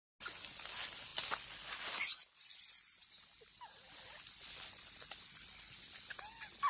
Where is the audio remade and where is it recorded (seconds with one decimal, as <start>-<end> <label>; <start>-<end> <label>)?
0.0-6.7 recorded